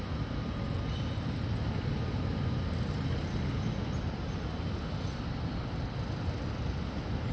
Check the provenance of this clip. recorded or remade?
recorded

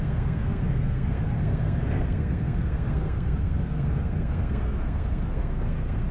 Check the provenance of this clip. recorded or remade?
remade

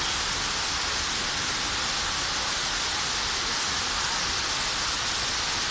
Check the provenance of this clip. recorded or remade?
recorded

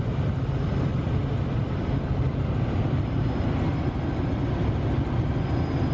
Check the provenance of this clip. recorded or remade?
recorded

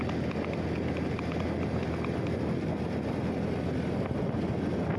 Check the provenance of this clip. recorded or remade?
recorded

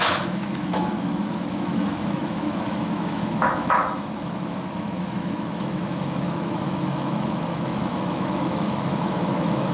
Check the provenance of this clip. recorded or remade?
remade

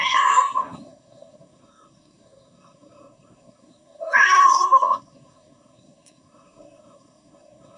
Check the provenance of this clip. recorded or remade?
remade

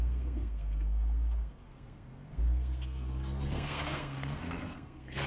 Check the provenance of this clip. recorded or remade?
remade